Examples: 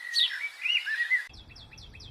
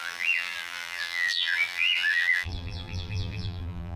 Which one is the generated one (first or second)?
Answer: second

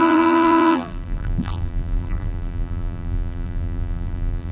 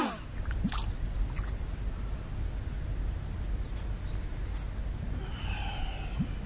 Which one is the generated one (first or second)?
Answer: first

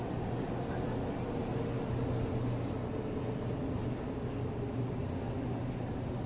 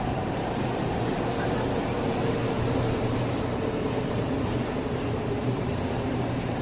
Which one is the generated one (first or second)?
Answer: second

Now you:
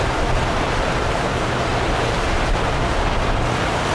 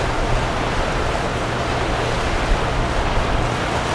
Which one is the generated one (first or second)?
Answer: first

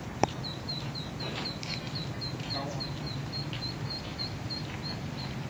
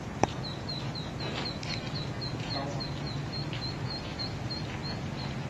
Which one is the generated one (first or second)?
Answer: first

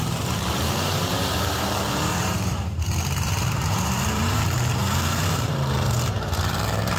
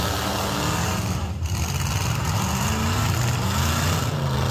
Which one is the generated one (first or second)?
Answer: first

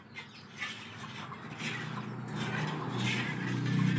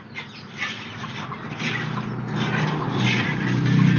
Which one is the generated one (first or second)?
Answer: second